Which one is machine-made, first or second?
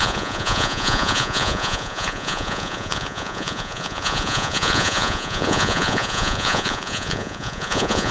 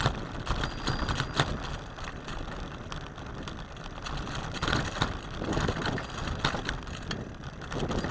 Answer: first